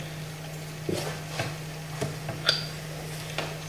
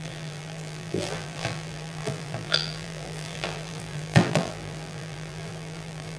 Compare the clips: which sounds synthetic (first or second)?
second